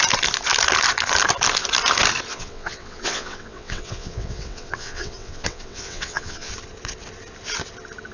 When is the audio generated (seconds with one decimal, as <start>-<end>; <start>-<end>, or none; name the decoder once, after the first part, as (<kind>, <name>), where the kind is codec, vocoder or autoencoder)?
2.3-6.5 (vocoder, WaveNeXt)